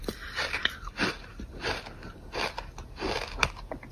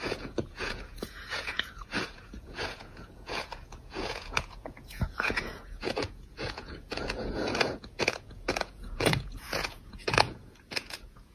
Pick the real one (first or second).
first